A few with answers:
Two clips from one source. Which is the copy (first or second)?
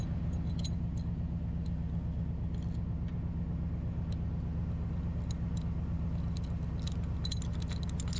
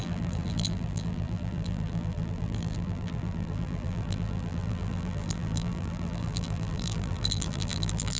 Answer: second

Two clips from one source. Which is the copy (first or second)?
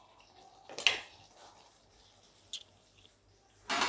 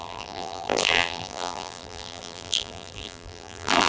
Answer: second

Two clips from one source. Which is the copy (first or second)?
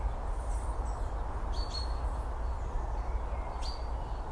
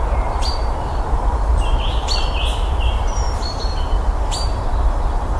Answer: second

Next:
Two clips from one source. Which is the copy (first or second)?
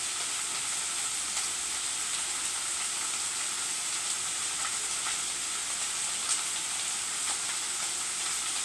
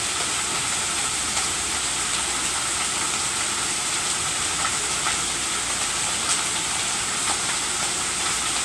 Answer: second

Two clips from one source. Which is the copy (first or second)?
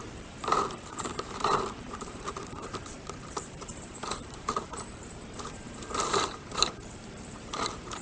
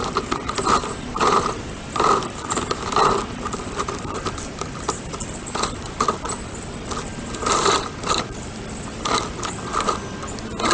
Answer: first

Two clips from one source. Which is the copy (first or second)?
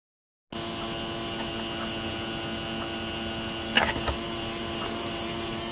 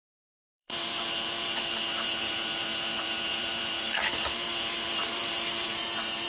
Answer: second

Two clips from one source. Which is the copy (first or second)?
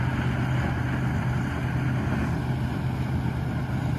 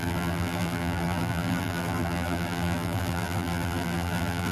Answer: second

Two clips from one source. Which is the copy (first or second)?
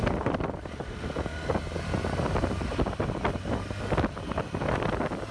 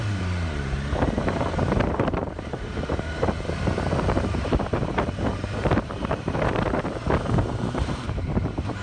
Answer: second